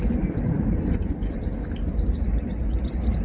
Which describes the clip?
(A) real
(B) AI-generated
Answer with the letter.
A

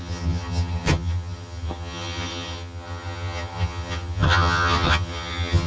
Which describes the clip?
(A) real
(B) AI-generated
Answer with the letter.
B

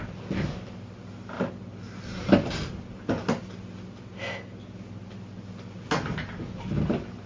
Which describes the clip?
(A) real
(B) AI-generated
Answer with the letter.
A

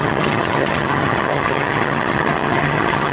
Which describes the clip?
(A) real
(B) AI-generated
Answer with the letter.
B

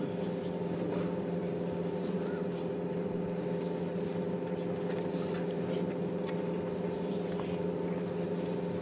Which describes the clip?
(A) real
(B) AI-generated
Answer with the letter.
A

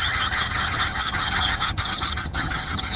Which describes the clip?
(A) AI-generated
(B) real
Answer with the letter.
A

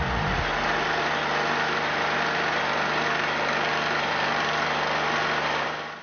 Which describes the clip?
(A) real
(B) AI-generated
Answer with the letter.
A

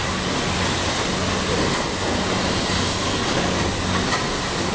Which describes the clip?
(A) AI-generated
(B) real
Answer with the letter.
B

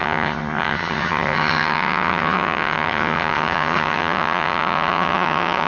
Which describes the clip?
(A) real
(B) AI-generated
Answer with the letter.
B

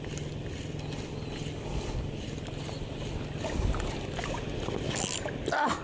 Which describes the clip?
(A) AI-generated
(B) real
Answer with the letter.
B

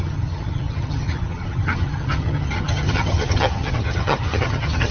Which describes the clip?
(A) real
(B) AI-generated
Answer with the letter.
B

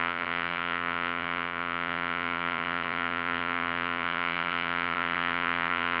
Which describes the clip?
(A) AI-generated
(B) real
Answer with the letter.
A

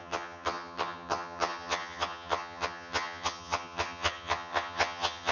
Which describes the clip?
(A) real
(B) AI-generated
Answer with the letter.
B